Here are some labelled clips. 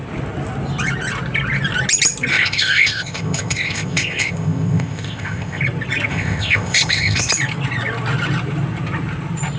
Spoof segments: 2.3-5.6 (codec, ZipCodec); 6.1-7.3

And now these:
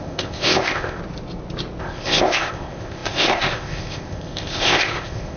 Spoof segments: 0.0-1.0 (codec, ZipCodec); 1.8-5.4

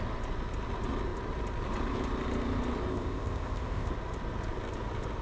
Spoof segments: 2.9-3.9 (codec, ZipCodec)